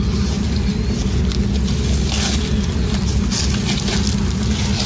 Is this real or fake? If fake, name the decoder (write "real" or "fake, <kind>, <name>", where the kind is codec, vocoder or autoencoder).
real